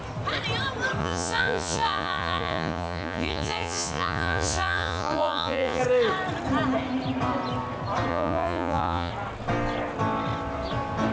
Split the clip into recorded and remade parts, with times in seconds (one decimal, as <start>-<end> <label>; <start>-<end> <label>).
0.0-1.0 recorded; 1.0-5.8 remade; 5.8-8.1 recorded; 8.1-9.1 remade; 9.1-11.1 recorded